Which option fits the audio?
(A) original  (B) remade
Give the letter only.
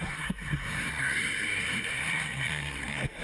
B